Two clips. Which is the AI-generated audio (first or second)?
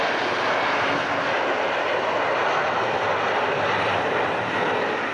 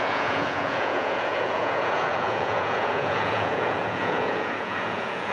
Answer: second